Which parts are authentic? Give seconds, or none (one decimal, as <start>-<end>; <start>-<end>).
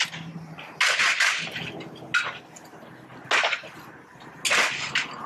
0.0-5.3